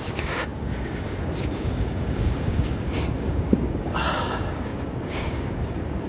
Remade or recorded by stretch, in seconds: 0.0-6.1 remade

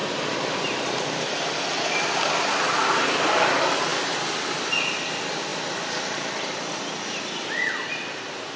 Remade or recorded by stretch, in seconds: 0.0-1.6 recorded; 1.6-3.9 remade; 3.9-4.5 recorded; 4.5-8.6 remade

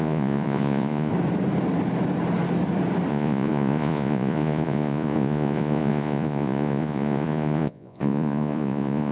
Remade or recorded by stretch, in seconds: 0.0-1.1 remade; 1.1-3.1 recorded; 3.1-9.1 remade